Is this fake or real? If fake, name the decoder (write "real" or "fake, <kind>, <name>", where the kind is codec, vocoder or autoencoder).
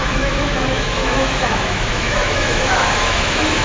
fake, autoencoder, DAC-VAE